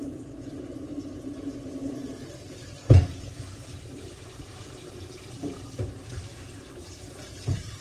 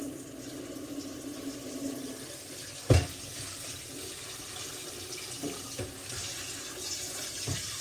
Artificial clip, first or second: first